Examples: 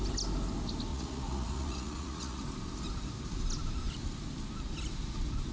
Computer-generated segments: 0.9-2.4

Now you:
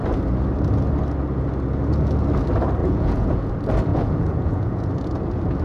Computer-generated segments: 2.8-3.5; 3.9-4.9

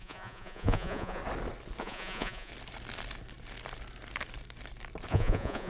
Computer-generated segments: 0.0-1.2; 1.8-2.5; 5.1-5.7

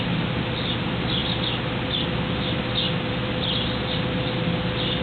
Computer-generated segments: none

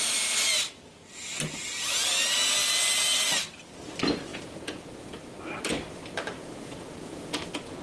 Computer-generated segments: 4.3-5.2; 6.4-7.8

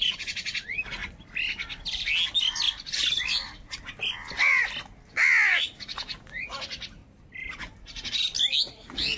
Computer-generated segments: 0.0-1.0; 5.5-7.0; 8.6-9.2